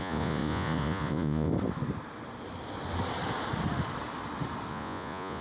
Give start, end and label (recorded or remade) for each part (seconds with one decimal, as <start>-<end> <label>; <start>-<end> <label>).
0.0-1.5 remade; 1.5-4.7 recorded; 4.7-5.4 remade